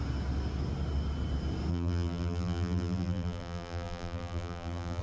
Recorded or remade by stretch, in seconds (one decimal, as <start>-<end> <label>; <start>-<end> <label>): 0.0-1.7 recorded; 1.7-5.0 remade